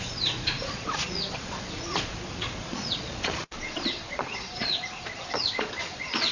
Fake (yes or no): yes